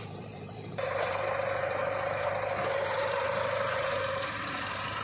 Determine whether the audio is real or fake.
fake